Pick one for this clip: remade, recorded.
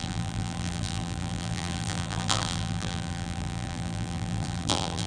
remade